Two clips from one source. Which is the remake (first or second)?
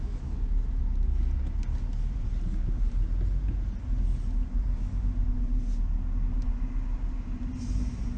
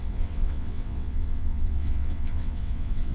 second